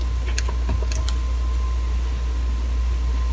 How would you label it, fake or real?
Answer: real